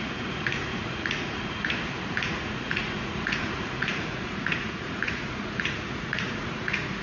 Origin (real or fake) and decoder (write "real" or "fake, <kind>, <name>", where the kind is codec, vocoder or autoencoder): fake, vocoder, Vocos